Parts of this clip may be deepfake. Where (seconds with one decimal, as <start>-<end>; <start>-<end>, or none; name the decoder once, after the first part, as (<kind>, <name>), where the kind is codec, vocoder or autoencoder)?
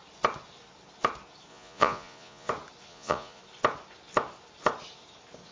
1.5-2.5 (vocoder, Vocos); 2.9-3.4